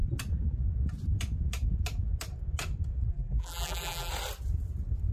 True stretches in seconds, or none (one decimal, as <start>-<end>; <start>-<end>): 0.0-3.1; 4.1-5.1